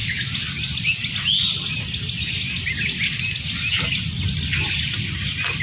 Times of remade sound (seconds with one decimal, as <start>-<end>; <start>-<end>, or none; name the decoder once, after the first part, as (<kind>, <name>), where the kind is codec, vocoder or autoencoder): none